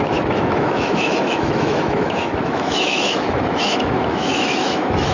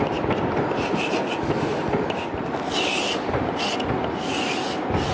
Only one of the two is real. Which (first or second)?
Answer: second